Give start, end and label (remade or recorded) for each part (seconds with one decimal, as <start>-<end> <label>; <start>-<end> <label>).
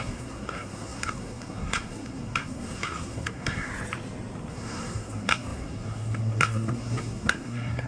0.0-3.7 remade; 3.7-4.5 recorded; 4.5-7.9 remade